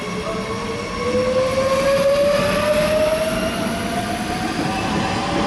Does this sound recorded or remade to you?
recorded